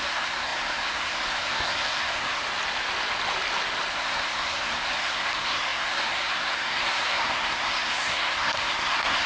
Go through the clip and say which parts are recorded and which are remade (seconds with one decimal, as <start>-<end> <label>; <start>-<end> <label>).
0.0-2.4 remade; 2.4-3.9 recorded; 3.9-9.3 remade